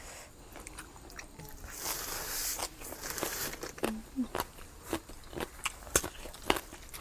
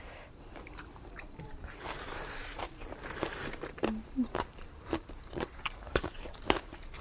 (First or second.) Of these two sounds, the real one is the first